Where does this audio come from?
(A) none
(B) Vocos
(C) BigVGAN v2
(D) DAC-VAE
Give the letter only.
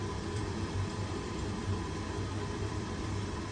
C